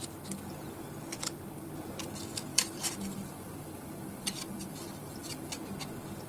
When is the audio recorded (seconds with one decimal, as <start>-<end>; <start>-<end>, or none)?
0.0-2.5; 5.5-6.3